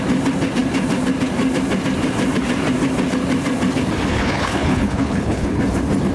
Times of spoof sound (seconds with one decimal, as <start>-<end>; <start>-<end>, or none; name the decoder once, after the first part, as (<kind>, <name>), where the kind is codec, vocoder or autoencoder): 4.1-5.6 (codec, HILCodec)